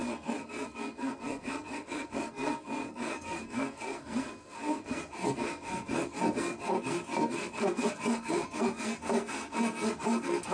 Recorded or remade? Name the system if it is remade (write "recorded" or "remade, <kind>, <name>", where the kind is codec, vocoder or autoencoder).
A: remade, codec, SNAC